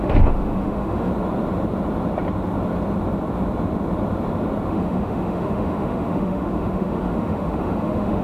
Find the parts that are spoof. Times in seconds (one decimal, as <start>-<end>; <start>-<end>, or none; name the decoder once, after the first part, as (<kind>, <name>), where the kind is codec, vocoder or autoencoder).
0.0-1.1 (autoencoder, DAC-VAE); 4.7-8.2